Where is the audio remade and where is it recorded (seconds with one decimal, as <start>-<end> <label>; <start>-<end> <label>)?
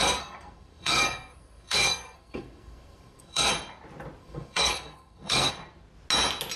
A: 0.0-3.5 remade; 3.5-4.2 recorded; 4.2-5.5 remade; 5.5-6.6 recorded